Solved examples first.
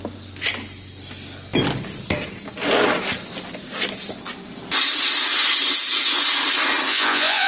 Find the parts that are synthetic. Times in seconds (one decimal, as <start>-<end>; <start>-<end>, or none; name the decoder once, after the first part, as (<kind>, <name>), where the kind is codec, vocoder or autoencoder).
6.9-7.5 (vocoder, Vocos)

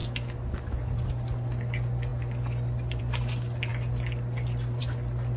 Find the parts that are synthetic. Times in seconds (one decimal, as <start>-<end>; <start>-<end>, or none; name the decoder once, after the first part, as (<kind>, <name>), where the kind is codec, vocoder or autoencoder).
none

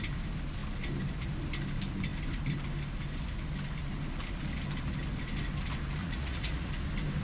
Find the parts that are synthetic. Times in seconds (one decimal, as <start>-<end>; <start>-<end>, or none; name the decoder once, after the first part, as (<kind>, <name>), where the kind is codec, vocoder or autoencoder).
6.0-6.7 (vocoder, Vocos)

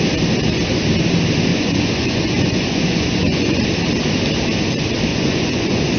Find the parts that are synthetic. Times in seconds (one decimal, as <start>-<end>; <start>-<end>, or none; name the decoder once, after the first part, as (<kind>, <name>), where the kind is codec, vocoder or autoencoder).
1.5-3.6 (vocoder, Vocos); 5.1-6.0

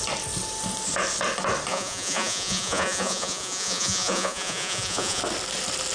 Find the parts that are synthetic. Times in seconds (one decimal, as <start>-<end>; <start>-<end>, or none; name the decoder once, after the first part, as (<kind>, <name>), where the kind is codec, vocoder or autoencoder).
1.7-5.2 (vocoder, Vocos)

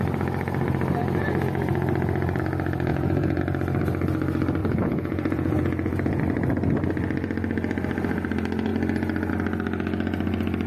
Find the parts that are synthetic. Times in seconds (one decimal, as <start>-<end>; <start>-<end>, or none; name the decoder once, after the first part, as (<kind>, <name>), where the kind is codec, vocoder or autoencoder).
2.9-3.4 (vocoder, Vocos); 4.6-6.2